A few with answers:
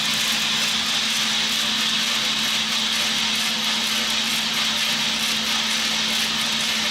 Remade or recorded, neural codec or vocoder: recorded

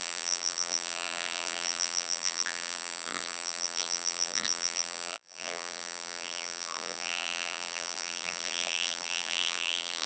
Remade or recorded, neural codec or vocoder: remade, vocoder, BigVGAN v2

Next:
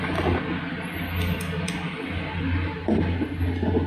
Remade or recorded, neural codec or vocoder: recorded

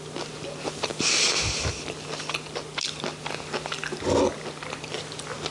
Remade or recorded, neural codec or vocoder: recorded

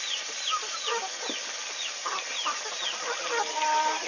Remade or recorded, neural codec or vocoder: recorded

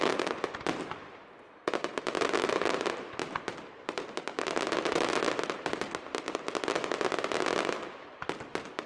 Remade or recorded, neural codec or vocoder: recorded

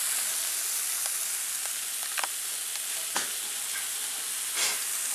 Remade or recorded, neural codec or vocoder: recorded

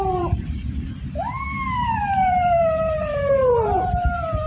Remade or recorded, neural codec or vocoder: remade, vocoder, BigVGAN v2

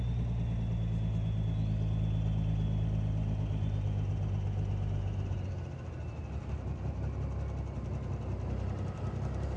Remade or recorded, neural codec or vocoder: recorded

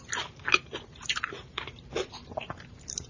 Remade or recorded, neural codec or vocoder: remade, vocoder, BigVGAN v2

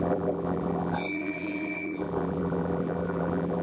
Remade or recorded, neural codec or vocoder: remade, vocoder, BigVGAN v2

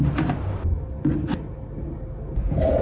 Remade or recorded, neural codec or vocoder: recorded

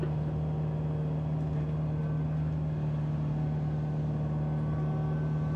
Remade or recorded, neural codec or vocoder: recorded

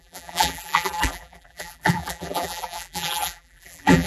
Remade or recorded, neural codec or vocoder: remade, vocoder, BigVGAN v2